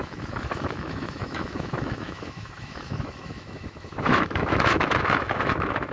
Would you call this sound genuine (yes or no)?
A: no